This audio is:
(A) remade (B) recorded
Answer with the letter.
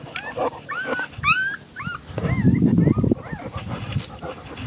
B